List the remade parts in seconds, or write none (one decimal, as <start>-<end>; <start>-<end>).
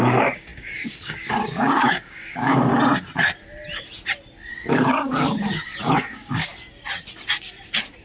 0.0-2.7; 4.5-6.5